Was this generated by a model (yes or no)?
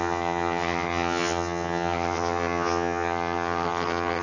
yes